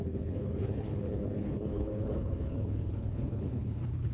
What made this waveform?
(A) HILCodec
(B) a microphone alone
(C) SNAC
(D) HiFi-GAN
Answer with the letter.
A